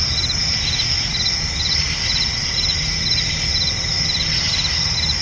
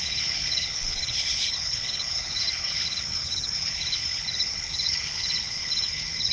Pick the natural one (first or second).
first